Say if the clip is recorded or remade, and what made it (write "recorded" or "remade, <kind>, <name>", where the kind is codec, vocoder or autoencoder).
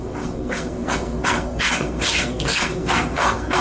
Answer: remade, codec, SNAC